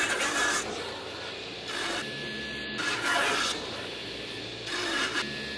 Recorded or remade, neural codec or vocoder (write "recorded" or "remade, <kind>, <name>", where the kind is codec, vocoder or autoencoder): recorded